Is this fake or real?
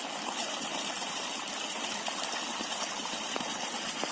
fake